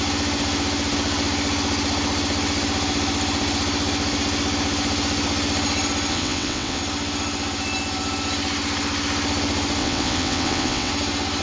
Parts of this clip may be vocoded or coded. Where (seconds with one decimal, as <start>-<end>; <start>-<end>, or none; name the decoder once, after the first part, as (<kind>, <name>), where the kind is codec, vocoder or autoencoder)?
6.1-6.8 (vocoder, WaveNeXt); 9.8-10.9